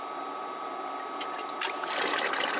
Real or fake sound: real